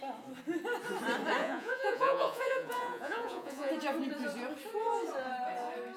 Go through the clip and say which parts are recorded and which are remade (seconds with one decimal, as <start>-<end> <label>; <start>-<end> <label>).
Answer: 0.0-1.4 recorded; 1.4-3.7 remade; 3.7-6.0 recorded